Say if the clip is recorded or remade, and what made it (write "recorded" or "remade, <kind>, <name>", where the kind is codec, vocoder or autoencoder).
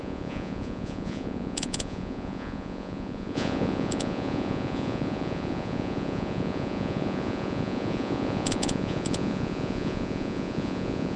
remade, vocoder, Vocos